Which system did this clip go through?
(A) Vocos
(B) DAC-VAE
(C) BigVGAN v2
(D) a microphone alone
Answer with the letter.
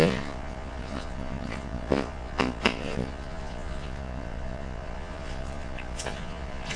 A